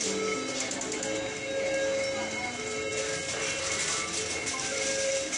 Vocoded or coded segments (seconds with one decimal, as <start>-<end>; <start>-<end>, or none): none